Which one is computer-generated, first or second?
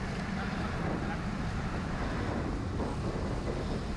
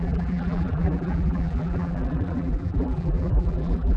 second